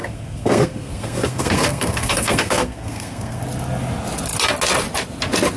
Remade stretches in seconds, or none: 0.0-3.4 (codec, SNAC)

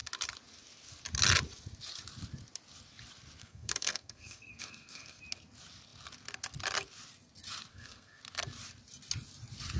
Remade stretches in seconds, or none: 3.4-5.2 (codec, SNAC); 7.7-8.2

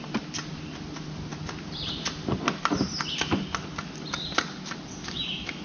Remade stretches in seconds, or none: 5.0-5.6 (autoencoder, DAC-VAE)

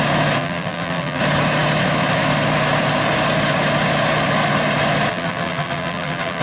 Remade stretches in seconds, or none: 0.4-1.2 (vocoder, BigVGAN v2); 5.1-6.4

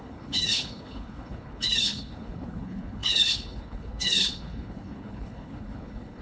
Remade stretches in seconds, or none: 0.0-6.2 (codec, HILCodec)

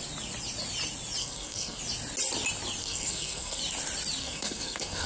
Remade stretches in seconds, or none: 1.2-1.8 (codec, SNAC); 2.8-3.6; 4.2-5.1